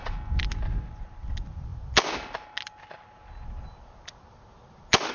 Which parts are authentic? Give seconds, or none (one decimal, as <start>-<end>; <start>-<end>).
0.0-5.1